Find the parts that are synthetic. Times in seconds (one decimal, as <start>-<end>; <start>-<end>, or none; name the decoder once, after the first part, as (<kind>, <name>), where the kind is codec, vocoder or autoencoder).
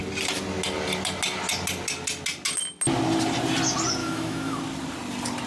4.0-4.6 (autoencoder, DAC-VAE)